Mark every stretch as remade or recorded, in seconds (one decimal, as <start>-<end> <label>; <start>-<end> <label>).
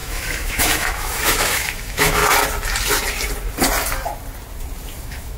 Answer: 0.0-2.2 remade; 2.2-5.0 recorded; 5.0-5.4 remade